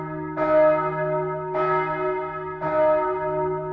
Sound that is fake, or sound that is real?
real